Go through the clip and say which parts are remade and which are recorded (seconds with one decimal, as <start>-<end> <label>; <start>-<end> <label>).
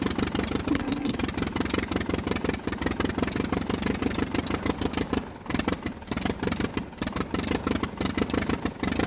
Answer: 0.0-0.7 recorded; 0.7-1.2 remade; 1.2-9.1 recorded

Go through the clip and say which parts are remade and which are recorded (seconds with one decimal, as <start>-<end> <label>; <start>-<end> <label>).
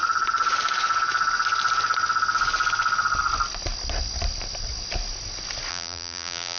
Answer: 0.0-5.7 recorded; 5.7-6.6 remade